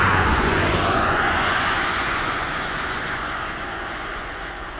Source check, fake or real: fake